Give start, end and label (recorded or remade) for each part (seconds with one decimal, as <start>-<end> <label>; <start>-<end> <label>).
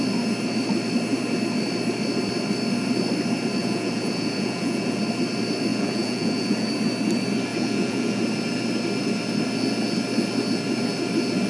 0.0-3.6 recorded; 3.6-5.0 remade; 5.0-5.7 recorded; 5.7-6.7 remade; 6.7-7.5 recorded; 7.5-8.2 remade; 8.2-11.5 recorded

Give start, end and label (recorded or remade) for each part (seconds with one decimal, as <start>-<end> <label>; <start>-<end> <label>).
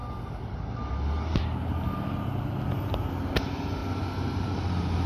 0.0-5.1 recorded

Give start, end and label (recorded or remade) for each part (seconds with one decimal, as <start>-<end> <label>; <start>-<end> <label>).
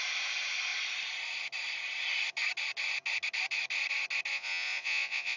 0.0-4.3 recorded; 4.3-5.4 remade